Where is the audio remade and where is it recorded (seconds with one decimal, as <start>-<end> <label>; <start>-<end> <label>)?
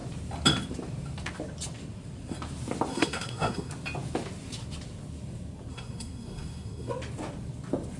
0.0-2.9 recorded; 2.9-3.7 remade; 3.7-5.7 recorded; 5.7-6.9 remade; 6.9-8.0 recorded